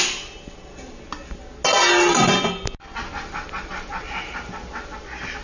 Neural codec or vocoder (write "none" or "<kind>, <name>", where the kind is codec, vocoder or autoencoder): none